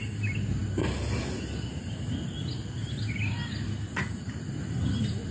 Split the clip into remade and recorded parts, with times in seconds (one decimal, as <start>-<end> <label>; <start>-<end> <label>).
0.0-5.3 recorded